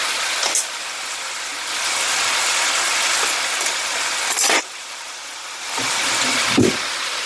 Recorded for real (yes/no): yes